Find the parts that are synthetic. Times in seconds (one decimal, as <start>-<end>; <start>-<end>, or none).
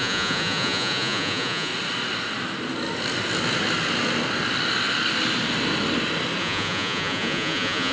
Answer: 0.0-1.7; 6.4-7.9